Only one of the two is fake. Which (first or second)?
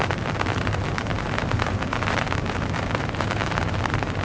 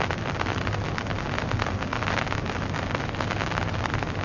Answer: first